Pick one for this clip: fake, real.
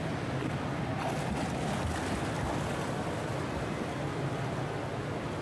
real